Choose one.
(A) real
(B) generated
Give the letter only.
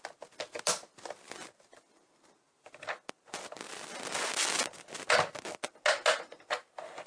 A